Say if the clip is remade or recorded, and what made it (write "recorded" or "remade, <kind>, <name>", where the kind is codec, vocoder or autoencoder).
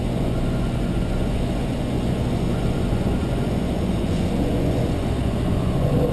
remade, vocoder, Vocos